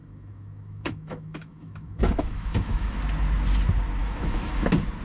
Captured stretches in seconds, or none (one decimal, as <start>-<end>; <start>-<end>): 3.0-4.0; 4.5-5.0